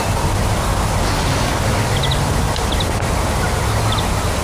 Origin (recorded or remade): recorded